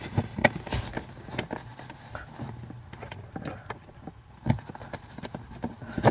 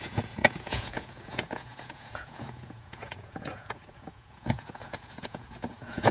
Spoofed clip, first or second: second